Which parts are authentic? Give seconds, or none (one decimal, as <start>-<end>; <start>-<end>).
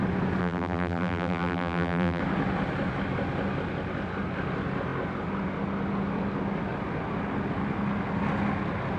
0.0-0.4; 2.2-9.0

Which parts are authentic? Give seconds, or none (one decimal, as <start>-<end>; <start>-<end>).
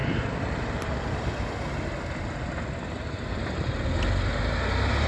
0.0-5.1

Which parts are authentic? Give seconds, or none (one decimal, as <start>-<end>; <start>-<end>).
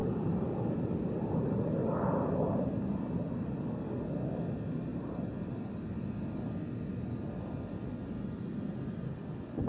1.7-4.9; 5.6-9.7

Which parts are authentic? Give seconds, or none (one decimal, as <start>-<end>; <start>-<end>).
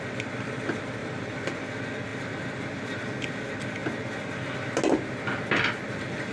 0.0-1.0; 1.6-6.3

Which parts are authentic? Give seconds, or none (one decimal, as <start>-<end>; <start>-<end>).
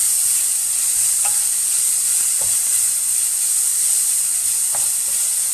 3.3-3.7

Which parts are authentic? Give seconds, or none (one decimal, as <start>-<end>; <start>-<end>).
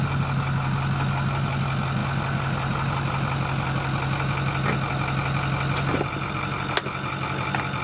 0.0-7.8